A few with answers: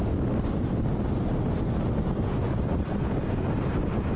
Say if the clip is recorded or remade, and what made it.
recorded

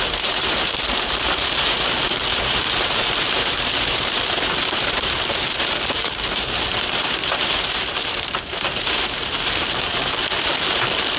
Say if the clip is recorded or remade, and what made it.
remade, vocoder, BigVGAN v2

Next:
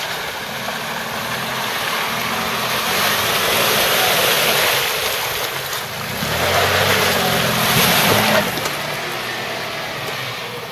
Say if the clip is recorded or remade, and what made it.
recorded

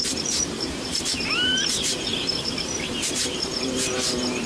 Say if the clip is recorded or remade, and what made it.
remade, vocoder, BigVGAN v2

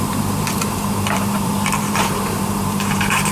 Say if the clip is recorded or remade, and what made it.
remade, vocoder, BigVGAN v2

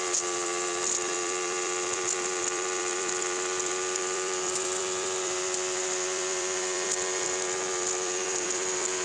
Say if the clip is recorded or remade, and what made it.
remade, vocoder, BigVGAN v2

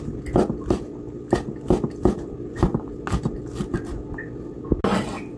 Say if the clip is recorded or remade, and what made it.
recorded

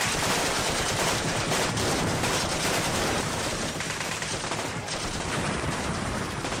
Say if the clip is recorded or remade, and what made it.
remade, vocoder, BigVGAN v2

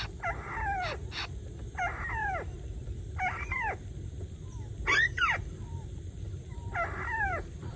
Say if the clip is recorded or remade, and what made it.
recorded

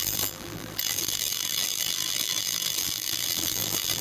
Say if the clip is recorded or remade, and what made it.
remade, vocoder, BigVGAN v2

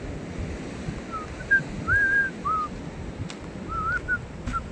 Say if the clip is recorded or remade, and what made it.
recorded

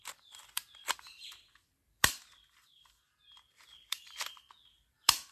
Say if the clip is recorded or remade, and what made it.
remade, vocoder, BigVGAN v2